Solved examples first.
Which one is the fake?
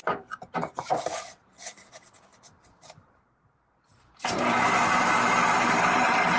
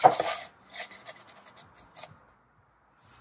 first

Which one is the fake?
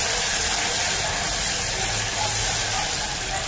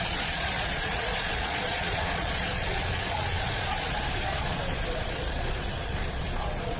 second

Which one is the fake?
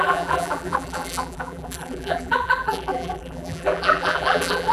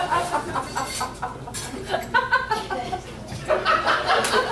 first